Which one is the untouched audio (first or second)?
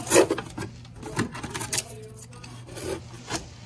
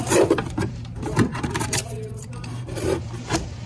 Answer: first